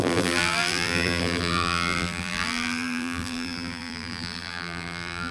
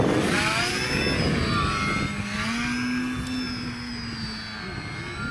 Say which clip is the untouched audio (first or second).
second